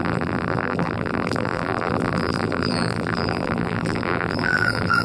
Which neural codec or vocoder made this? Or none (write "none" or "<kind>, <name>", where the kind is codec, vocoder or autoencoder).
vocoder, BigVGAN v2